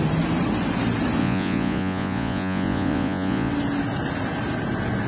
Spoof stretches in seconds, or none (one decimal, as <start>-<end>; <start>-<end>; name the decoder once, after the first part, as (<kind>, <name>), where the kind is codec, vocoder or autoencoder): 1.2-3.5 (vocoder, Vocos)

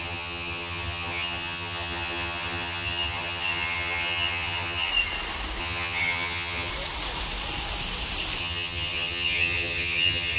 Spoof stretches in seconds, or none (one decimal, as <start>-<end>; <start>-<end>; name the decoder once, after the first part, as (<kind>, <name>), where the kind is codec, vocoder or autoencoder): 0.0-4.9 (vocoder, HiFi-GAN); 5.6-6.7; 8.4-10.4

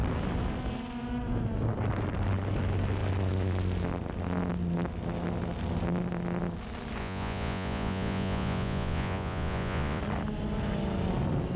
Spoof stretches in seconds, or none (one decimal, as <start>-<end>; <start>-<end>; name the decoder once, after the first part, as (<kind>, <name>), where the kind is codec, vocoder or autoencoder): 7.0-10.0 (vocoder, Vocos)

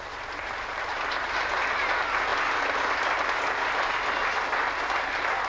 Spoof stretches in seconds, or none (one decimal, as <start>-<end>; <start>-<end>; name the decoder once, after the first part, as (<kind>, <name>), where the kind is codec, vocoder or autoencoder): none

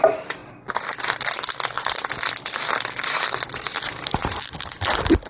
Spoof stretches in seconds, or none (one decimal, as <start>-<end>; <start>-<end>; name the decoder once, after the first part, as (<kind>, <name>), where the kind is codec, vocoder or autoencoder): none